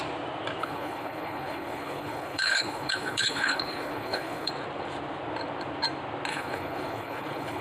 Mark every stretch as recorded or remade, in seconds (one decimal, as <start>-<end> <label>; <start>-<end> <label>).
0.0-0.6 recorded; 0.6-4.5 remade; 4.5-6.3 recorded; 6.3-7.6 remade